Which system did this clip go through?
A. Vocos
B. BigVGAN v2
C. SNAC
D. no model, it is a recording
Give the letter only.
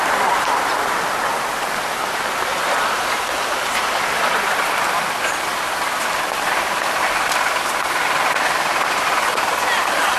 B